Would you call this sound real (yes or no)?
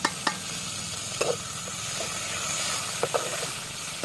no